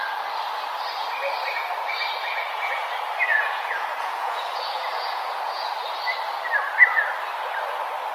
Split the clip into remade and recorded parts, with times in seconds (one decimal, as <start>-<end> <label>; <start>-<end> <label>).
0.0-2.3 recorded; 2.3-2.9 remade; 2.9-3.3 recorded; 3.3-5.7 remade; 5.7-8.1 recorded